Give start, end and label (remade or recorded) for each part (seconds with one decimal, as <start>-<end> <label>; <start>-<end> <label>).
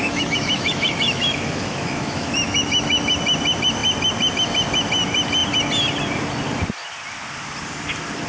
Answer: 0.0-3.1 remade; 3.1-8.3 recorded